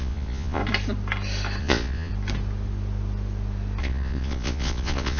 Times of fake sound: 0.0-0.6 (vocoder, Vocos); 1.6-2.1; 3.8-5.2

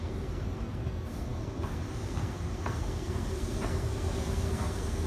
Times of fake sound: 0.0-5.1 (codec, SNAC)

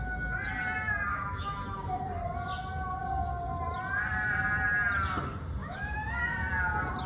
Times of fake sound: 1.1-2.0 (autoencoder, DAC-VAE); 5.6-6.2

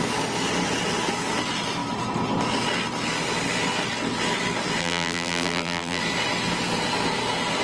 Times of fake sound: 4.8-6.0 (vocoder, BigVGAN v2)

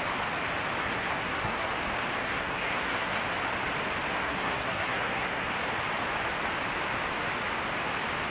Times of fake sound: 0.8-1.7 (codec, SNAC); 2.2-3.2; 4.1-5.5

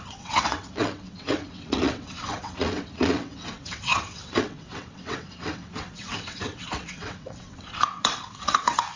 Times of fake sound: 0.0-9.0 (vocoder, WaveNeXt)

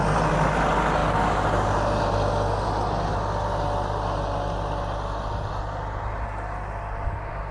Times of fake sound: none

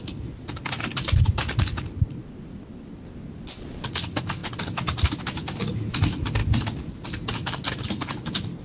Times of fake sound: none